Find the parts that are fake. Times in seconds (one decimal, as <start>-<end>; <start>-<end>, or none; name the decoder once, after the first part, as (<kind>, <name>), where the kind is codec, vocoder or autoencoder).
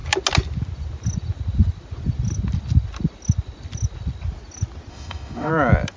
4.9-5.5 (autoencoder, DAC-VAE)